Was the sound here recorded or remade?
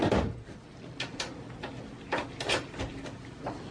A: recorded